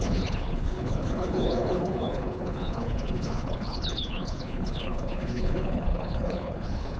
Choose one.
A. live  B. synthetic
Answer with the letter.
B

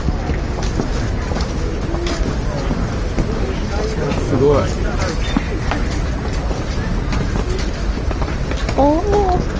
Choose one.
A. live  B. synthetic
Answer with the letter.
A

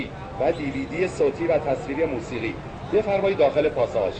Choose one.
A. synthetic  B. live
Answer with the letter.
B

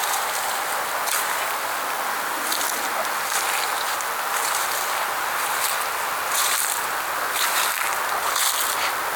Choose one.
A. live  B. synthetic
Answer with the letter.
A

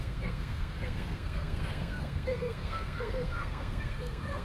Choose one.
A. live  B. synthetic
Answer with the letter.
B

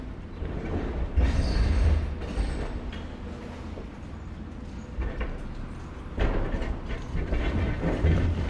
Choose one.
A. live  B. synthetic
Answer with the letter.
A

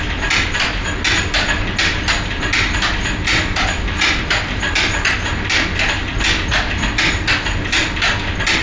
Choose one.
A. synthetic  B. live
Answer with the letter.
B